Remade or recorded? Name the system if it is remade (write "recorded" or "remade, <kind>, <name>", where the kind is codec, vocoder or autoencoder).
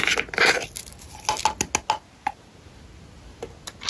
recorded